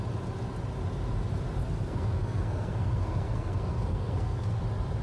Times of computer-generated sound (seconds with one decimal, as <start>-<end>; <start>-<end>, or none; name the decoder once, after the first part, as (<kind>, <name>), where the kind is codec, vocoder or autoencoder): 1.6-4.6 (codec, SNAC)